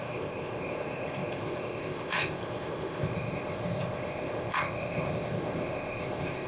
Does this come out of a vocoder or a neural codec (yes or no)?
yes